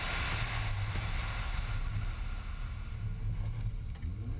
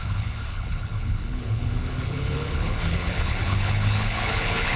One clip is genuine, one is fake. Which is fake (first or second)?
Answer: second